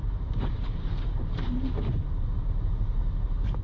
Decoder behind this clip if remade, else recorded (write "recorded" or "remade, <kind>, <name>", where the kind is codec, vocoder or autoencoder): remade, vocoder, BigVGAN v2